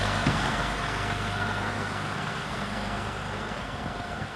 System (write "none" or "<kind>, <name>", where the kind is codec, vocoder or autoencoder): codec, SNAC